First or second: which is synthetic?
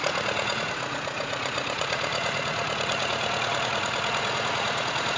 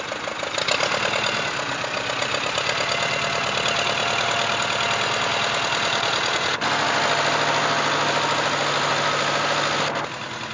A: first